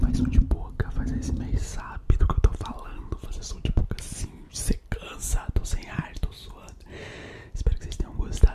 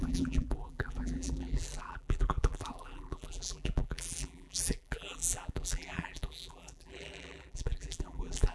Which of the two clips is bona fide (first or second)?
first